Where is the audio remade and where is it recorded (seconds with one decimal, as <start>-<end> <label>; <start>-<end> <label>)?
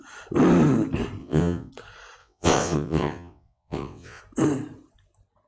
0.0-1.2 recorded; 1.2-1.7 remade; 1.7-2.2 recorded; 2.2-4.2 remade; 4.2-5.5 recorded